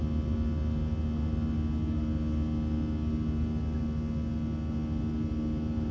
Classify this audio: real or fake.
real